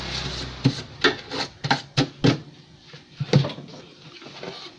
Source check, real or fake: real